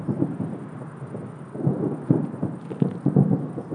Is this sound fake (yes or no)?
no